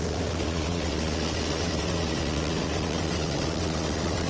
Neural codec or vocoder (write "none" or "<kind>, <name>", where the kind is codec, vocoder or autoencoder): vocoder, WaveNeXt